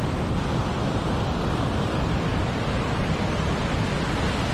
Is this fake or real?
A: real